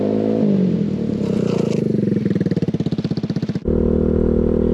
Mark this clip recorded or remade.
recorded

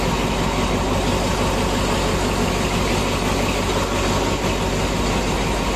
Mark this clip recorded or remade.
recorded